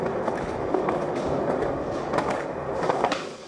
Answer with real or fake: fake